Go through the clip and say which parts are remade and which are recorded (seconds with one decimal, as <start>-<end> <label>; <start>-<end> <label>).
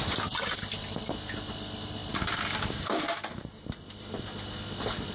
0.0-2.0 recorded; 2.0-3.0 remade; 3.0-5.1 recorded